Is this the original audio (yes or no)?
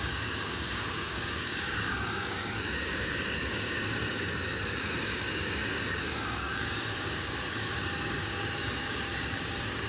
no